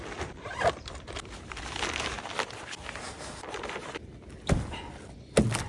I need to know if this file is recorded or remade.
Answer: recorded